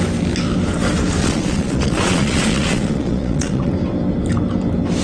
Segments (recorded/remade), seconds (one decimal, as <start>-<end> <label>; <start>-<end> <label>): 0.0-1.2 recorded; 1.2-3.7 remade; 3.7-5.0 recorded